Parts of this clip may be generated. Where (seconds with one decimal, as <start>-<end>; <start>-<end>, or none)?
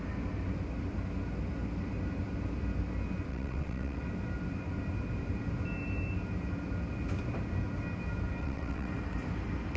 3.3-4.0; 8.4-8.9